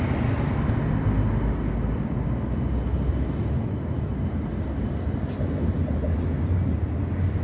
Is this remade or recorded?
recorded